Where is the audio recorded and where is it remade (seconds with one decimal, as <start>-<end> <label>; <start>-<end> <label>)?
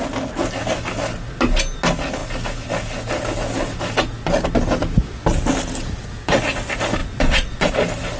0.0-7.0 recorded; 7.0-7.7 remade; 7.7-8.2 recorded